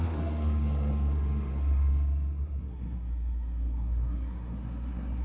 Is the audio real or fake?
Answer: fake